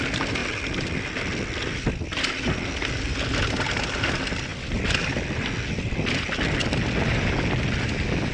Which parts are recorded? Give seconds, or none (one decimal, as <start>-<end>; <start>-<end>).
0.0-8.3